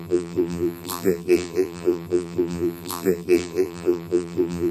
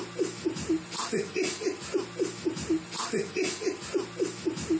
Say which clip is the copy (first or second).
first